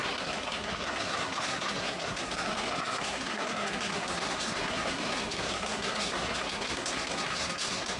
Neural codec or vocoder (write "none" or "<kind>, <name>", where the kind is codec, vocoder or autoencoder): codec, SNAC